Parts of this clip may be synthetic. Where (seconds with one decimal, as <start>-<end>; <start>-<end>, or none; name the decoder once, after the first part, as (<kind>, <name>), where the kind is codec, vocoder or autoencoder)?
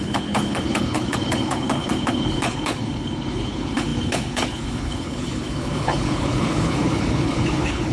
0.0-7.9 (codec, HILCodec)